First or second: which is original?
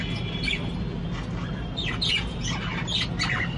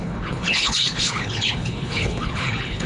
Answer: first